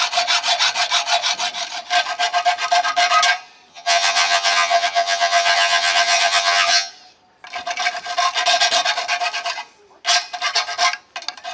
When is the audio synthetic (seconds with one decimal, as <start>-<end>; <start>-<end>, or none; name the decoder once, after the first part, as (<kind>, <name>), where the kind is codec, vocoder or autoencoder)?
3.7-6.9 (vocoder, HiFi-GAN)